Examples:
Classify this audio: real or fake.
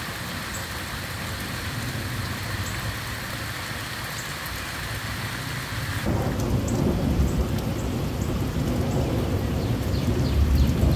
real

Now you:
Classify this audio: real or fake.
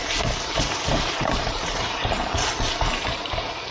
fake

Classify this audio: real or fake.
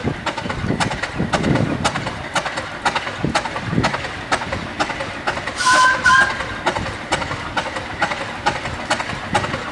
real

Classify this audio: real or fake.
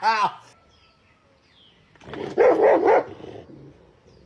real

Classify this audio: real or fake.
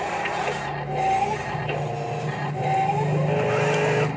real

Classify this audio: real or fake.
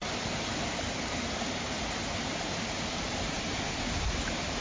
fake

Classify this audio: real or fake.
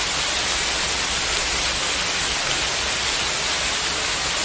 real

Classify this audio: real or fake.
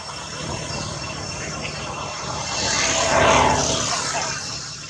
fake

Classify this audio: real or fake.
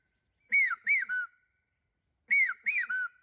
real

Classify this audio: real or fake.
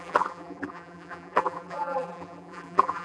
fake